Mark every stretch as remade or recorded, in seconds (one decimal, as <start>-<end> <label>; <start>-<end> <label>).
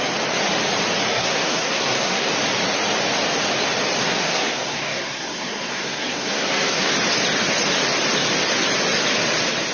0.0-1.1 recorded; 1.1-2.3 remade; 2.3-4.0 recorded; 4.0-6.9 remade; 6.9-9.7 recorded